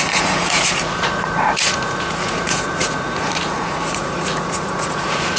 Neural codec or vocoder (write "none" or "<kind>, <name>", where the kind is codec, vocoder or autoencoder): vocoder, Vocos